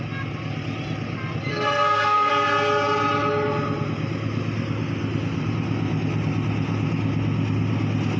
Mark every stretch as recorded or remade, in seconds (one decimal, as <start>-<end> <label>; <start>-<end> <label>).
0.0-1.5 recorded; 1.5-2.3 remade; 2.3-8.2 recorded